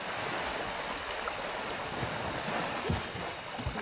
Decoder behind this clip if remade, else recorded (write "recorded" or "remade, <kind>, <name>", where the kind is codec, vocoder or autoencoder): recorded